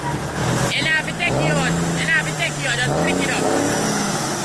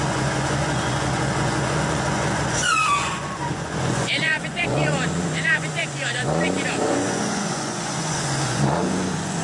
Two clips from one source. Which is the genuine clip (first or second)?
first